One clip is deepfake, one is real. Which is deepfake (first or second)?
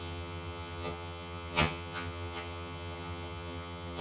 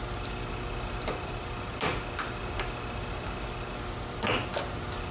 first